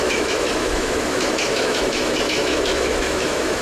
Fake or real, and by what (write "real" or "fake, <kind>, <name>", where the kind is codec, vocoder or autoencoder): fake, autoencoder, DAC-VAE